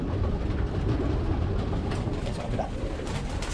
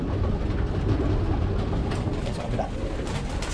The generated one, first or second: first